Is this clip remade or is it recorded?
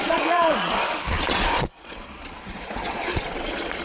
remade